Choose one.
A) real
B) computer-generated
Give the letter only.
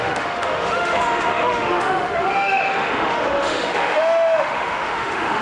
B